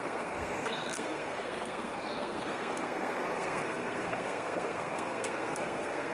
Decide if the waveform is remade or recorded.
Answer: remade